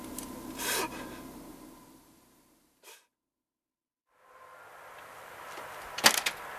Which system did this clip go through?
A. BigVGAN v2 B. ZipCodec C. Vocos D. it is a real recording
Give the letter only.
D